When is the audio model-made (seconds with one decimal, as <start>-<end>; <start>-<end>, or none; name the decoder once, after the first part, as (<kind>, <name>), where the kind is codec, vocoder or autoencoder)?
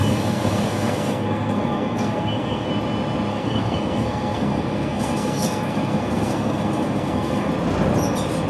0.0-2.7 (codec, SNAC); 3.3-7.5